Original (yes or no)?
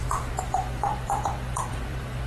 no